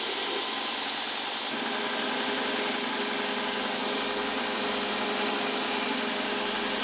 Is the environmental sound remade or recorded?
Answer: recorded